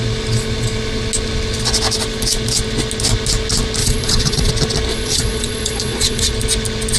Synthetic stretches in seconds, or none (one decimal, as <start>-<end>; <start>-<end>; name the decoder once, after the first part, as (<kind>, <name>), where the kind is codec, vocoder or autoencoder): 3.8-4.5 (vocoder, Vocos); 4.9-6.3